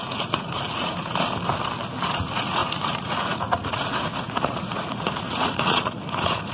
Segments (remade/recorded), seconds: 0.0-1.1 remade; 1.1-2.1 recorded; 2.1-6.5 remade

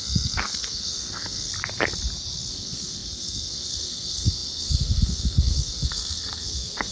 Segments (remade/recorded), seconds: 0.0-1.5 remade; 1.5-2.5 recorded; 2.5-6.9 remade

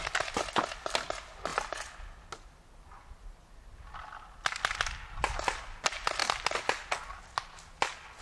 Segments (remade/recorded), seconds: 0.0-8.2 recorded

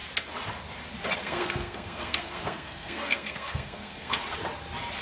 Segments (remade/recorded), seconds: 0.0-1.2 recorded; 1.2-4.2 remade; 4.2-5.0 recorded

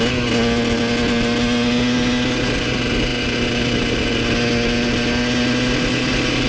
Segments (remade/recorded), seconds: 0.0-6.5 recorded

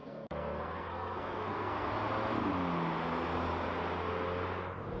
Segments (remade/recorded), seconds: 0.0-1.9 remade; 1.9-5.0 recorded